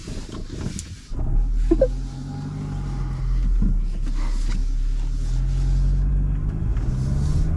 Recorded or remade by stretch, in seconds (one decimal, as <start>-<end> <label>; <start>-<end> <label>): 0.0-7.6 recorded